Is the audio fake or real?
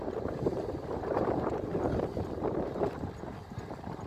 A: fake